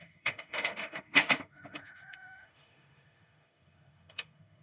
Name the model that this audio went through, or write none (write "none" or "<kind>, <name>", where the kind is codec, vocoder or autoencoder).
autoencoder, DAC-VAE